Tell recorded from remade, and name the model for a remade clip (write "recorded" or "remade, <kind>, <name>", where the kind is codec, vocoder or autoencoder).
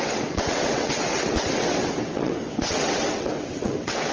remade, vocoder, WaveNeXt